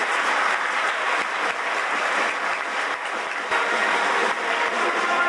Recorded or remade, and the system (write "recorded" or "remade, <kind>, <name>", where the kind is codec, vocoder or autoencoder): recorded